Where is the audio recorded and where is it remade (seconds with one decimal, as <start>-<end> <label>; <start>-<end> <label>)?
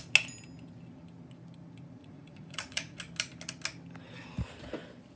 0.0-2.0 recorded; 2.0-3.0 remade; 3.0-5.2 recorded